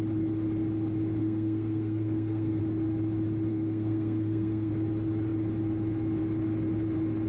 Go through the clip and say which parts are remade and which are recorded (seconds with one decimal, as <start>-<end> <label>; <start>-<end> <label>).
0.0-1.2 recorded; 1.2-2.6 remade; 2.6-3.5 recorded; 3.5-4.7 remade; 4.7-7.3 recorded